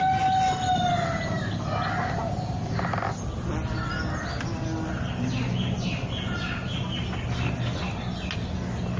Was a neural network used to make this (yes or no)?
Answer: no